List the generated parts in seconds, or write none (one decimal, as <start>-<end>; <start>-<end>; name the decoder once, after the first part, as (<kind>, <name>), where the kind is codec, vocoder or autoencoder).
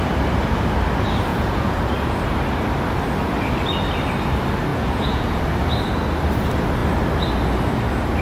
1.3-1.8 (vocoder, Vocos); 4.7-5.4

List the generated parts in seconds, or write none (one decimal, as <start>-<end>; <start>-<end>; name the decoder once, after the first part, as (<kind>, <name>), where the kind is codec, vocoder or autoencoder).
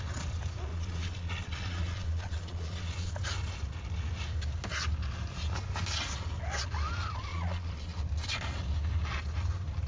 0.7-3.1 (vocoder, Vocos); 7.3-8.0